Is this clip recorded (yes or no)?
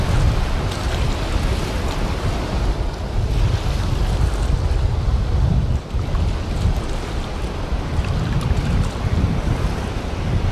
yes